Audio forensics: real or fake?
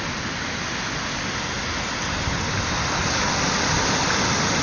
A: real